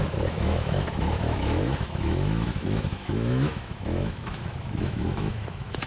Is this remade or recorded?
remade